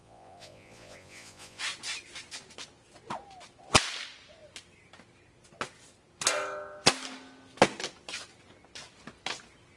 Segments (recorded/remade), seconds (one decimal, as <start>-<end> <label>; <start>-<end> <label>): 0.0-1.6 remade; 1.6-9.8 recorded